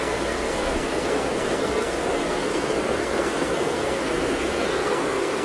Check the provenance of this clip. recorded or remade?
remade